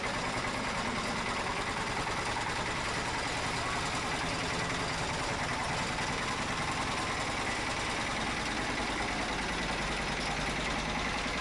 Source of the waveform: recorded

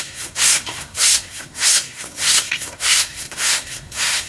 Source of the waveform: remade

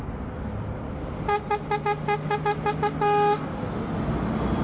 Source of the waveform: recorded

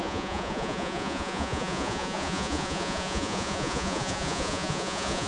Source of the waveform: remade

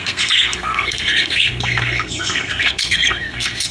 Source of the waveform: remade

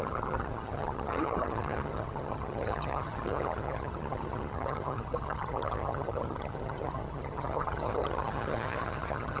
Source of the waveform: remade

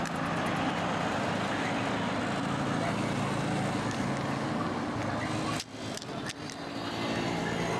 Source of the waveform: recorded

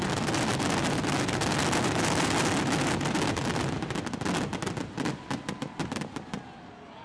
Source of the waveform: recorded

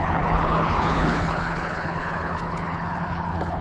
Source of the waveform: remade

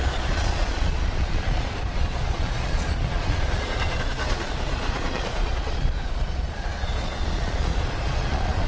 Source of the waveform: remade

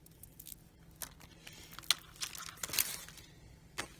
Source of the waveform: recorded